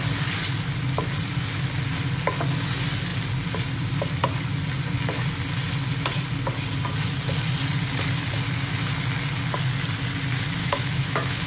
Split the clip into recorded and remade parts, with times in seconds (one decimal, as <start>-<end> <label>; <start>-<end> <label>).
0.0-10.6 recorded; 10.6-11.5 remade